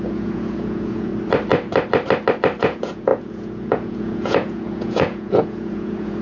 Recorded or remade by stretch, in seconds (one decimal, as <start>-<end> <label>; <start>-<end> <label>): 0.0-1.1 remade; 1.1-2.6 recorded; 2.6-6.2 remade